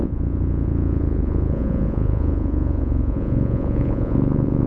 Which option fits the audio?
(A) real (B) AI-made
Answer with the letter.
B